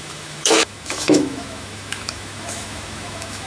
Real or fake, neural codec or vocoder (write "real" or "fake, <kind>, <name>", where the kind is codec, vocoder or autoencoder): fake, autoencoder, DAC-VAE